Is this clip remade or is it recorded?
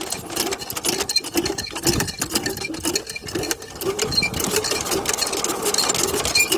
recorded